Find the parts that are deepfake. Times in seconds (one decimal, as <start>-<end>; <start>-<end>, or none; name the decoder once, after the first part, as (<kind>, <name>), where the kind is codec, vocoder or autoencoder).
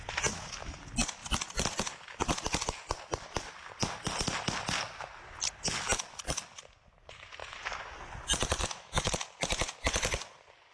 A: 8.6-9.1 (autoencoder, DAC-VAE)